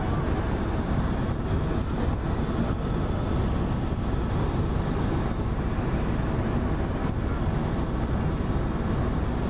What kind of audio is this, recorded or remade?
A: recorded